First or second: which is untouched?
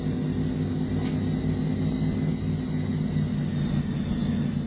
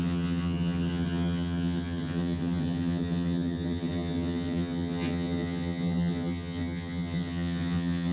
first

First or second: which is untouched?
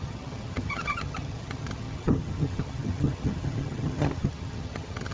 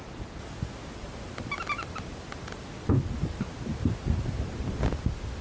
second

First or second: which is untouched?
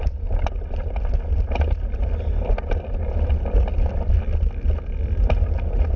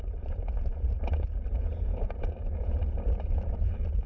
first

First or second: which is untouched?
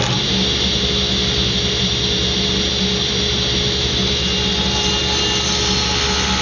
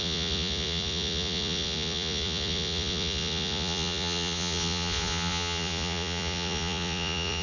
first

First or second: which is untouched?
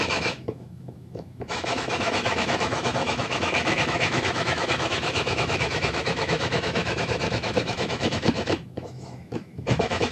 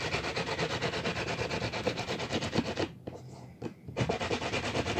second